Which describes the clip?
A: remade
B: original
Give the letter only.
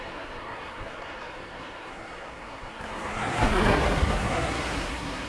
A